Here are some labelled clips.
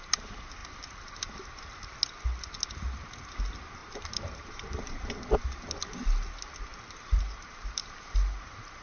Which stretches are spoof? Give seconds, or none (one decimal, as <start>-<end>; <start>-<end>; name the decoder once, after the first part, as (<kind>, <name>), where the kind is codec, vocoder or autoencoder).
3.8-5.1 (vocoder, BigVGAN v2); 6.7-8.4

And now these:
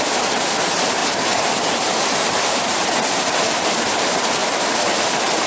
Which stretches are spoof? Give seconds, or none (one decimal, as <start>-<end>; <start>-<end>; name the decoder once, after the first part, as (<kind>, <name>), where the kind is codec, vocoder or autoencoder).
none

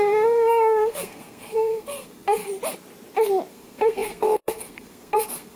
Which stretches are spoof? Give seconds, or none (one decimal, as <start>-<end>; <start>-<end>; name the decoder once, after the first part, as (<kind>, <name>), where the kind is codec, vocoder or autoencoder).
0.0-2.4 (codec, SNAC); 3.5-5.6